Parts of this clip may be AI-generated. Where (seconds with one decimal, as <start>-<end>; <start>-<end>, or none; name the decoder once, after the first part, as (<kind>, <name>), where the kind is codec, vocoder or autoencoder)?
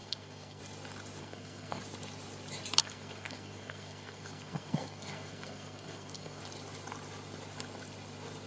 0.0-0.6 (codec, SNAC); 1.2-1.8; 2.8-6.4